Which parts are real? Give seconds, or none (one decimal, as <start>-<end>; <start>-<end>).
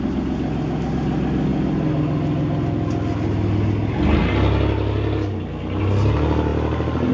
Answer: 0.0-7.1